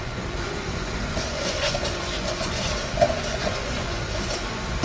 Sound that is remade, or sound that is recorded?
remade